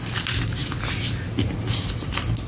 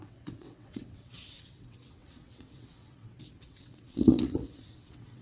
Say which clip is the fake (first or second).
second